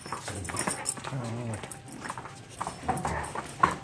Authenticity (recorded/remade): recorded